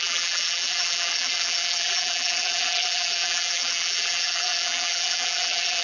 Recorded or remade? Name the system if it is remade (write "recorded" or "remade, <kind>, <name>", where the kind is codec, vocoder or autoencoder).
remade, vocoder, BigVGAN v2